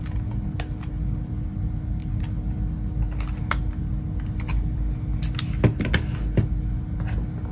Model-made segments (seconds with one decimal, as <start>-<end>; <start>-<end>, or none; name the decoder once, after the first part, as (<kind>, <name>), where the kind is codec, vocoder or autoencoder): none